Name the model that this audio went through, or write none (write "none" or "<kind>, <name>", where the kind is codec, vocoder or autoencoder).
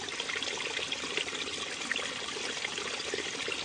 none